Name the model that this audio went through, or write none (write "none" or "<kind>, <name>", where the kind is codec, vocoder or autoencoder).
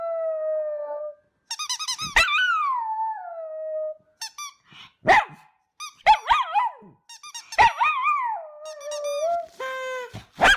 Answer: none